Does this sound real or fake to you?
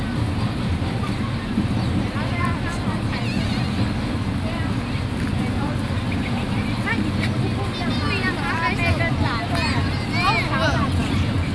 real